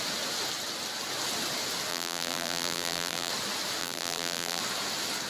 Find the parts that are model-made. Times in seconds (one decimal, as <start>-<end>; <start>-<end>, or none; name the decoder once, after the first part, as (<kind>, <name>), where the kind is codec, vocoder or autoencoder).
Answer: 1.9-3.3 (vocoder, BigVGAN v2); 3.8-4.6